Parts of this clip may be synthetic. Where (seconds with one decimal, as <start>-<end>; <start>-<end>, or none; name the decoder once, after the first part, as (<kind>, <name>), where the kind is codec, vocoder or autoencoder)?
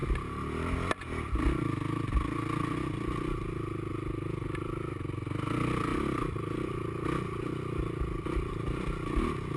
none